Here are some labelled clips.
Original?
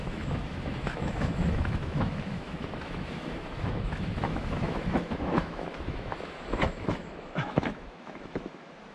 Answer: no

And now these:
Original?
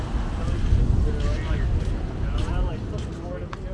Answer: yes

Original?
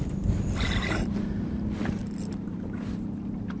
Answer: yes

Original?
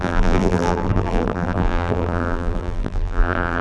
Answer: no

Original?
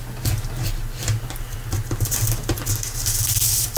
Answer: yes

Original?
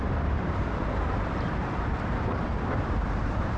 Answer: no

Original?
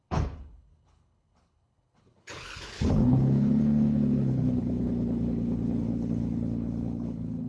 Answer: no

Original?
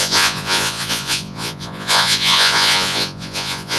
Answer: no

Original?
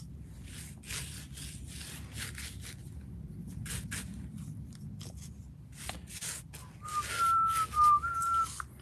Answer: yes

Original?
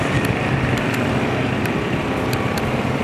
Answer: no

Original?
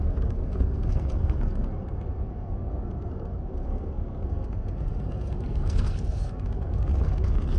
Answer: no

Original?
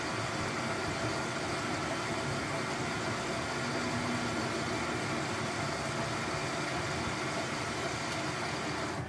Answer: yes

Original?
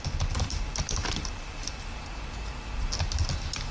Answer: yes